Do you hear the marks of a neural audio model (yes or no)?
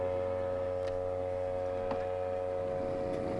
no